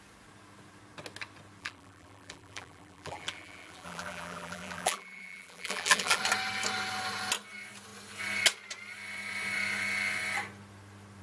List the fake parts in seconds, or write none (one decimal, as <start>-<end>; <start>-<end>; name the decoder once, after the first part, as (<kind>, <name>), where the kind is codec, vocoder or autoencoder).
1.6-6.2 (vocoder, BigVGAN v2)